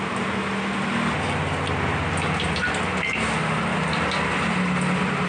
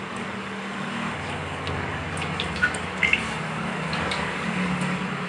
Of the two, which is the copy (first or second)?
second